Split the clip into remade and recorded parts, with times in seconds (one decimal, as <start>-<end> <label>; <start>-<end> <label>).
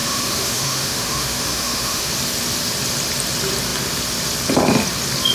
0.0-2.1 remade; 2.1-5.3 recorded